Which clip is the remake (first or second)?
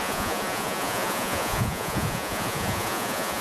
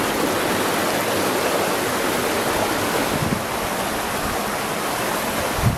first